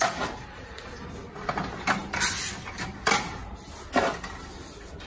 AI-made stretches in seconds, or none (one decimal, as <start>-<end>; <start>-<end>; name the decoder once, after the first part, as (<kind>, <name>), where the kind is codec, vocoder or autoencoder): none